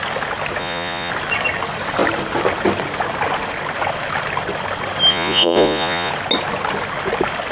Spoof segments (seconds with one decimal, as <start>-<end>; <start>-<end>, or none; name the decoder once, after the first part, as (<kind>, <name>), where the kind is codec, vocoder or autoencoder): 0.6-1.1 (vocoder, Vocos); 5.1-6.1